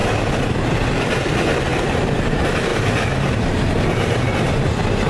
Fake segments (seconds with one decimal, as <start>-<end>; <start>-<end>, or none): 1.7-2.3